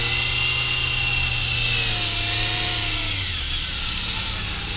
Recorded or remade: recorded